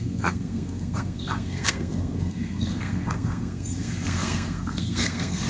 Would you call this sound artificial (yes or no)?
yes